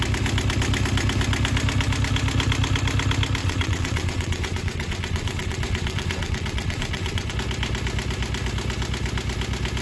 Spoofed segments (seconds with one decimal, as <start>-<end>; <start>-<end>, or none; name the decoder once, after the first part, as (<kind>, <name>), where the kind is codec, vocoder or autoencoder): 3.4-7.3 (vocoder, WaveNeXt)